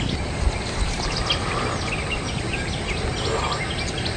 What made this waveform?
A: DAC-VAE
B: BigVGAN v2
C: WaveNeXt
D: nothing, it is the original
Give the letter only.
D